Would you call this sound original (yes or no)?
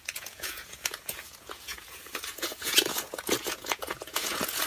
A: no